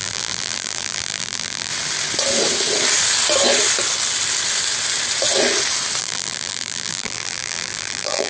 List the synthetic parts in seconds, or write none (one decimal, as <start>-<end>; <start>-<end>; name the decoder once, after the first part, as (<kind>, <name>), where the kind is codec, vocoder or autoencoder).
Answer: 0.0-1.7 (vocoder, BigVGAN v2); 6.0-8.3